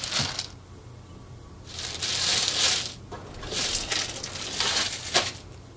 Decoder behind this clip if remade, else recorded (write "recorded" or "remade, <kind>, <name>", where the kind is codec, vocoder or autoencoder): recorded